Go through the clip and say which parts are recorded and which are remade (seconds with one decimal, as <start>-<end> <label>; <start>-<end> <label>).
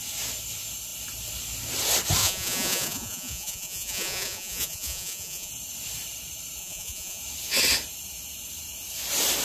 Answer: 0.0-2.2 recorded; 2.2-5.5 remade; 5.5-6.6 recorded; 6.6-7.2 remade; 7.2-9.4 recorded